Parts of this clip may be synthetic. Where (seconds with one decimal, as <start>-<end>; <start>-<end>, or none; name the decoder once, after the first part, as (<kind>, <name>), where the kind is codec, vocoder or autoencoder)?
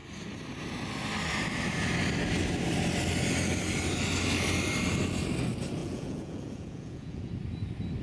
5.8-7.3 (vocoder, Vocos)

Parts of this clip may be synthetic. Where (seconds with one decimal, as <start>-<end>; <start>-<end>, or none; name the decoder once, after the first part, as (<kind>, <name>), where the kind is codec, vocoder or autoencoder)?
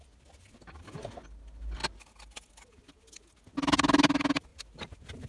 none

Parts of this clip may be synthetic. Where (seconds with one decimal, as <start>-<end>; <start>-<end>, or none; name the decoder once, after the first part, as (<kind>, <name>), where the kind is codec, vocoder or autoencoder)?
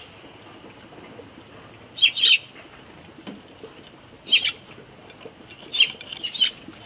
none